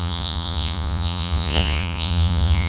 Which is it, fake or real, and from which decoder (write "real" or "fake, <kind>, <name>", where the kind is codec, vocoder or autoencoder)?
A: fake, vocoder, Vocos